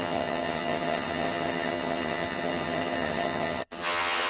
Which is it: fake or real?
fake